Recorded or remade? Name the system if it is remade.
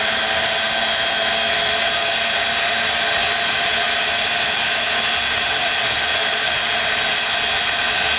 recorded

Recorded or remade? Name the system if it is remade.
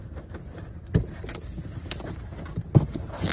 recorded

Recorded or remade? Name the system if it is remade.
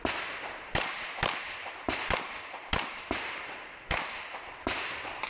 remade, vocoder, BigVGAN v2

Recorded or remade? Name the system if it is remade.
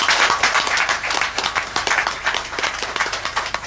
remade, vocoder, BigVGAN v2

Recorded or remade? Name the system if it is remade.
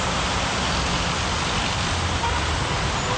recorded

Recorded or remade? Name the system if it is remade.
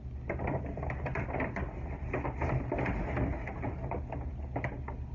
recorded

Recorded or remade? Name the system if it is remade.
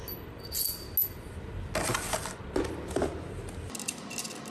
recorded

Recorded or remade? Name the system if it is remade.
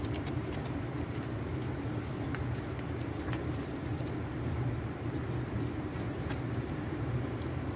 remade, vocoder, BigVGAN v2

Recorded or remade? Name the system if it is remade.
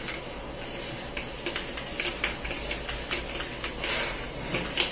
recorded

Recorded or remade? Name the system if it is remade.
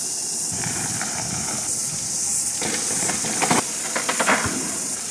recorded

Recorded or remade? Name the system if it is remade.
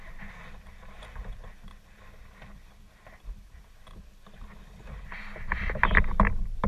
remade, vocoder, BigVGAN v2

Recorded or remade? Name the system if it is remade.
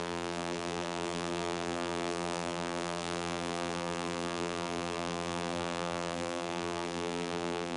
remade, vocoder, BigVGAN v2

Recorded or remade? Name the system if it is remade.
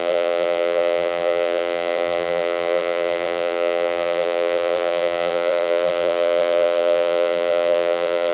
remade, vocoder, BigVGAN v2